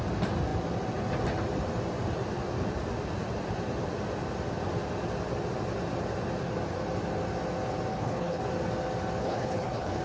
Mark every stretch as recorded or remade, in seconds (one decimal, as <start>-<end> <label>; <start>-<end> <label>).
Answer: 0.0-7.9 recorded; 7.9-8.4 remade; 8.4-9.2 recorded; 9.2-10.0 remade